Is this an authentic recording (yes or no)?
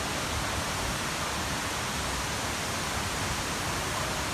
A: no